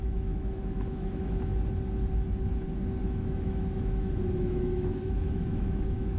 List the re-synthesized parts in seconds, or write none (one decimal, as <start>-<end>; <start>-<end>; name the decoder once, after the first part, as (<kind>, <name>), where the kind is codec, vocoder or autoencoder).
0.0-1.5 (autoencoder, DAC-VAE); 3.0-6.2